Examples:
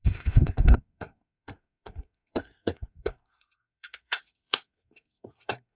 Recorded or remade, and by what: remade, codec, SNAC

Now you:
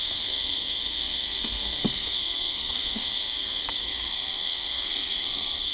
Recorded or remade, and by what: remade, codec, SNAC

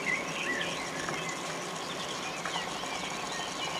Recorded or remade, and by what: recorded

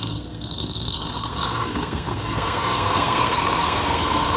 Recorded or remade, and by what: remade, codec, SNAC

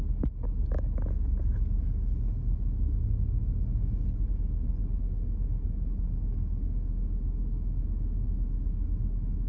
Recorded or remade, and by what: recorded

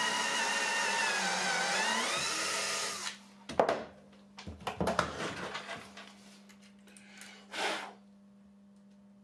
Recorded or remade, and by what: recorded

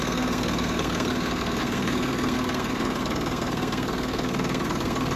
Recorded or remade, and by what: remade, codec, SNAC